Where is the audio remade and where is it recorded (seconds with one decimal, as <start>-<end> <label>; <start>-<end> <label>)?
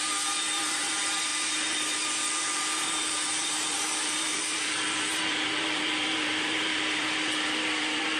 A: 0.0-8.2 remade